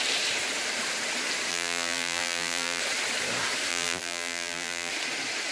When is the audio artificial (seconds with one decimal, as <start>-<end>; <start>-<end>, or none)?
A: 1.5-2.8; 3.7-4.9